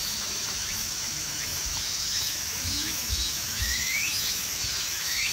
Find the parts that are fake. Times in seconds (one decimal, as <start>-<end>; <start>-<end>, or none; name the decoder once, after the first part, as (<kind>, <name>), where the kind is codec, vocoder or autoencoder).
0.0-5.3 (autoencoder, DAC-VAE)

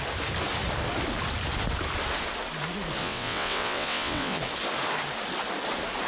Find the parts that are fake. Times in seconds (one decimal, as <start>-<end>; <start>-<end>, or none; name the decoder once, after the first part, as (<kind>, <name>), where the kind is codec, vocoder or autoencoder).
3.0-4.4 (vocoder, WaveNeXt)

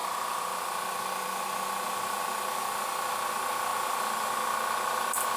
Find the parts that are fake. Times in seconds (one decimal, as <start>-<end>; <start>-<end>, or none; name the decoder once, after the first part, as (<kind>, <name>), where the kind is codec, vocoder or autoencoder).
none

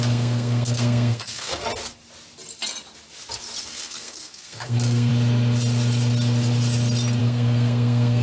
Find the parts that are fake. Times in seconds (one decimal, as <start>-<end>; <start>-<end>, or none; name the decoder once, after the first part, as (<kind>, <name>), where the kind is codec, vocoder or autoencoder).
0.0-1.7 (codec, SNAC); 3.6-5.1; 7.2-8.2

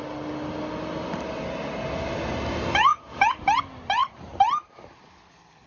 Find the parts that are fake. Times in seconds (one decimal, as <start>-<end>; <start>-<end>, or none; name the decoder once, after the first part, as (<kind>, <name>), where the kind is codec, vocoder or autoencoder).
none

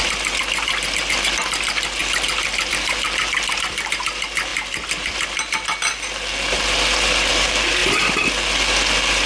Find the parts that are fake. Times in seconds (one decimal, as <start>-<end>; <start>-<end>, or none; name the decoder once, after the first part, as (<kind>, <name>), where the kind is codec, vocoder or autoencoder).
none

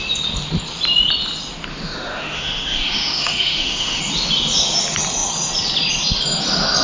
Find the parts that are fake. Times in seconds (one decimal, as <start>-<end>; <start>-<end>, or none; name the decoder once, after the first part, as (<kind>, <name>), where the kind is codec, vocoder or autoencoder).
1.7-4.0 (autoencoder, DAC-VAE)